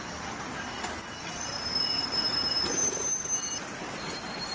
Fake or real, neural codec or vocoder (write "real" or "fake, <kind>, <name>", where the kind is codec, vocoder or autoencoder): real